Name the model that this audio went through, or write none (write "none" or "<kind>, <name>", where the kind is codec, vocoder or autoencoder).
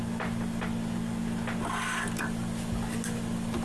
none